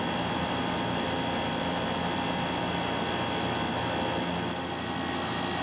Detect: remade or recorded recorded